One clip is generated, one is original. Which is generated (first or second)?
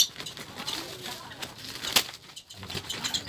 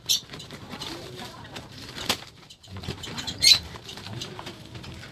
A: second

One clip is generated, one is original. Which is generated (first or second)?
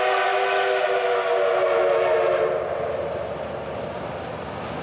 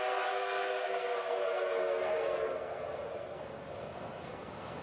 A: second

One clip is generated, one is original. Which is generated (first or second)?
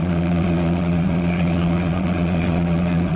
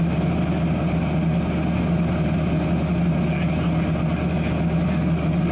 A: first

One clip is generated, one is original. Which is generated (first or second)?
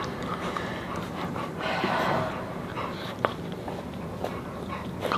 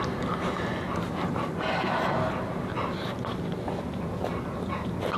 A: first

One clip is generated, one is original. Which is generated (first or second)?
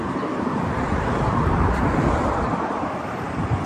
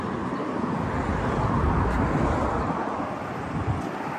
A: first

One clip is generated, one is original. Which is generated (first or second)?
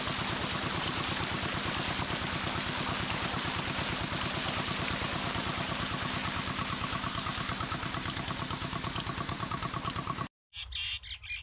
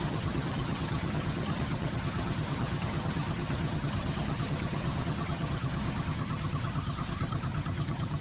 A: second